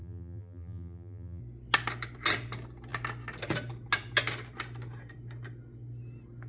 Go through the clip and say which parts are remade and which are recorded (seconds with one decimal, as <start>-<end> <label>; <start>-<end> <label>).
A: 0.0-1.4 remade; 1.4-6.5 recorded